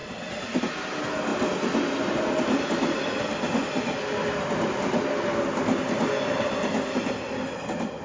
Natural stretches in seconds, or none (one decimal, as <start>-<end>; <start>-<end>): 0.0-8.0